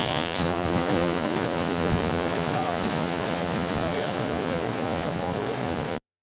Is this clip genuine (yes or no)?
no